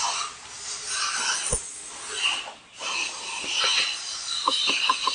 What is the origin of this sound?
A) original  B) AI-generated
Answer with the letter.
A